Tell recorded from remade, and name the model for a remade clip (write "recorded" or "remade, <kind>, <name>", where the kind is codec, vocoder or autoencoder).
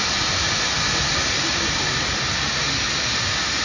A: recorded